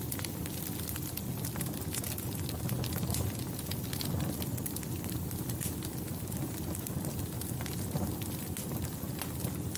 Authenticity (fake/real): real